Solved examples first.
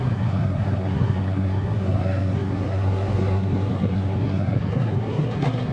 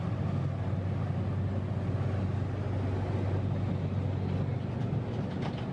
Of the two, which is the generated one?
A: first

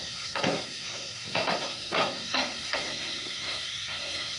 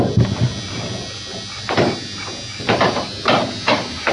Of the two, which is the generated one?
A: first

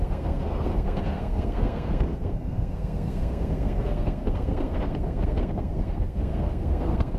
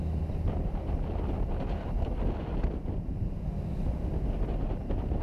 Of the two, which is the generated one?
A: first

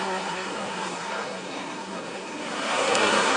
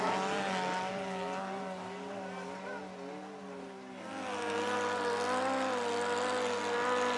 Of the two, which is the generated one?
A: first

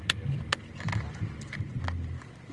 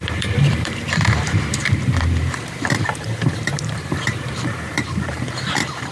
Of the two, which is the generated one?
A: second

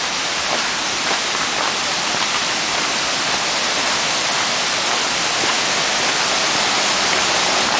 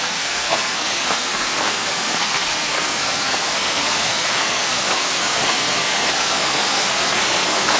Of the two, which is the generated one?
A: second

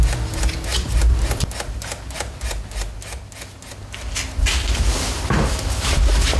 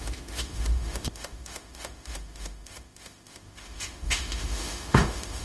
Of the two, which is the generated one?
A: second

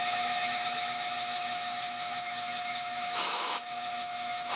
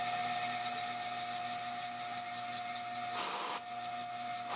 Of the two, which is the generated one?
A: first